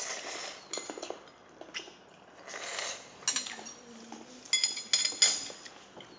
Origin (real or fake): real